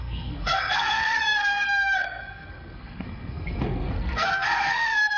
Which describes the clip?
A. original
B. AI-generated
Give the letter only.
B